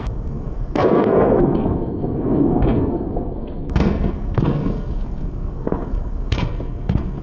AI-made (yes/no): yes